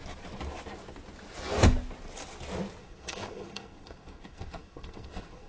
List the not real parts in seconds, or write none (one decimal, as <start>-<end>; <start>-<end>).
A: 2.8-5.5